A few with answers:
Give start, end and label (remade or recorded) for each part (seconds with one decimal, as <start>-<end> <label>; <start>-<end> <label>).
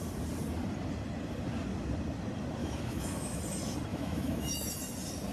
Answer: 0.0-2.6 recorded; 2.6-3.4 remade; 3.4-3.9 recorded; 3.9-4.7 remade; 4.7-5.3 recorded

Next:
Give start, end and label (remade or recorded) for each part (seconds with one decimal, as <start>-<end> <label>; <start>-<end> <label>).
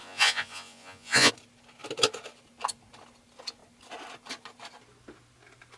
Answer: 0.0-1.3 remade; 1.3-5.8 recorded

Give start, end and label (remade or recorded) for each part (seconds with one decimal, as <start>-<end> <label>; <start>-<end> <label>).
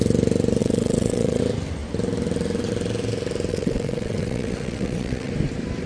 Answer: 0.0-0.6 recorded; 0.6-1.4 remade; 1.4-3.5 recorded; 3.5-5.3 remade; 5.3-5.9 recorded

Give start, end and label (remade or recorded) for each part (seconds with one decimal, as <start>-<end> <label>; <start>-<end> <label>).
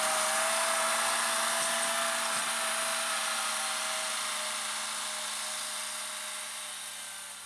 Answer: 0.0-7.5 recorded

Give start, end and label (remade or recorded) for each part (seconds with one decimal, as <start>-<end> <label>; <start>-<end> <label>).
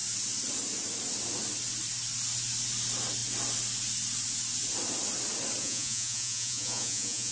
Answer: 0.0-5.6 recorded; 5.6-7.3 remade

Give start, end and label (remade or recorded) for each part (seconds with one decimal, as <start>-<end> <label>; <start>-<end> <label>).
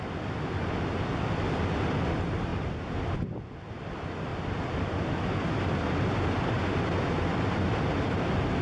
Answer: 0.0-8.6 recorded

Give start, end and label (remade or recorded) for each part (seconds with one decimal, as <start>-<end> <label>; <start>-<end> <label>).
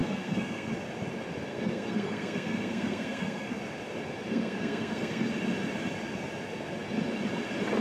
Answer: 0.0-0.7 remade; 0.7-1.5 recorded; 1.5-3.6 remade; 3.6-4.3 recorded; 4.3-5.3 remade; 5.3-7.8 recorded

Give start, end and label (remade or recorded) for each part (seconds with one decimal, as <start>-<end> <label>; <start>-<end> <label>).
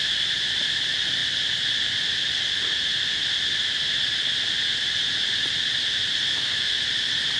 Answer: 0.0-6.3 recorded; 6.3-6.8 remade; 6.8-7.4 recorded